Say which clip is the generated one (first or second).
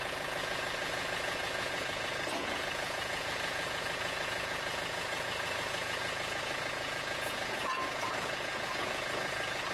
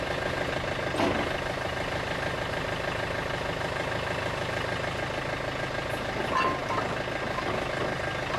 first